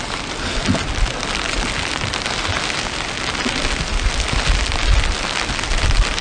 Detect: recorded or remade recorded